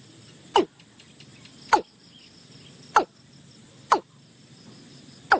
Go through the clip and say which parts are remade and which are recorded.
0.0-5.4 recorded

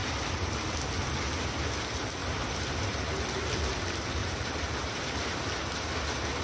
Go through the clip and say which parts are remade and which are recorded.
0.0-2.2 recorded; 2.2-2.7 remade; 2.7-3.1 recorded; 3.1-3.7 remade; 3.7-4.2 recorded; 4.2-5.0 remade; 5.0-6.4 recorded

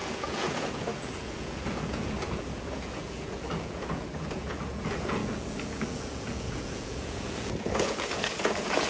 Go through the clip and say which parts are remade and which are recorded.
0.0-8.9 remade

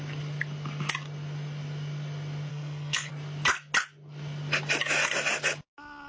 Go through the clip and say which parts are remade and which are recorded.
0.0-2.5 recorded; 2.5-3.1 remade; 3.1-6.1 recorded